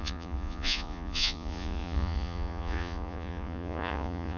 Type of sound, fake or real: fake